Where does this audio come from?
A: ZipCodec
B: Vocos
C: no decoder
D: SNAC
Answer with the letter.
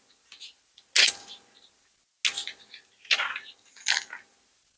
C